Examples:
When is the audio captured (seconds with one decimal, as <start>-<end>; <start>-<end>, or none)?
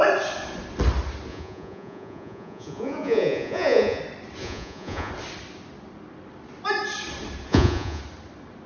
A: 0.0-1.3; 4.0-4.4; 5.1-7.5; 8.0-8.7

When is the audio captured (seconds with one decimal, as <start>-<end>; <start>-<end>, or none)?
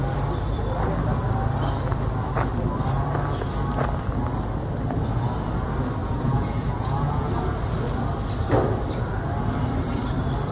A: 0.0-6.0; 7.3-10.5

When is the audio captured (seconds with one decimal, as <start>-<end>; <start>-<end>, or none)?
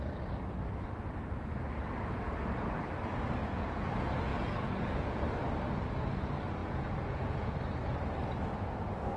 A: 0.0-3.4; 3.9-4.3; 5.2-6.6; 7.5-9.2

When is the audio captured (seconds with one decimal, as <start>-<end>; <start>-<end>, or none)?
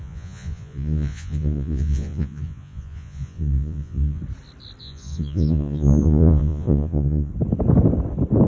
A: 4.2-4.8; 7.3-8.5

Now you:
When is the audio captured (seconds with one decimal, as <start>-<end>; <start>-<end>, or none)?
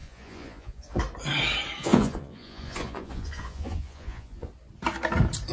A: 1.0-1.8; 4.5-5.5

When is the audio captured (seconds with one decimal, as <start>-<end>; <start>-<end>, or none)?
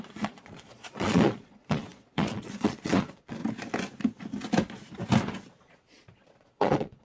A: 3.4-5.6